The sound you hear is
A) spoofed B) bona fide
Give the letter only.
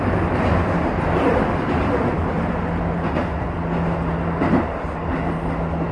B